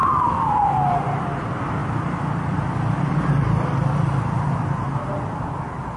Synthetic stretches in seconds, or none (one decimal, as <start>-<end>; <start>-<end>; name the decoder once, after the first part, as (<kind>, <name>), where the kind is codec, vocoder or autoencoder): 0.0-0.5 (vocoder, BigVGAN v2); 1.8-4.5